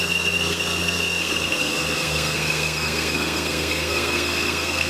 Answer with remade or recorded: remade